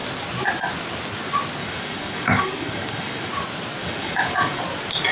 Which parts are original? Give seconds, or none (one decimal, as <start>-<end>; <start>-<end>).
0.0-1.6; 3.3-3.8; 4.6-5.1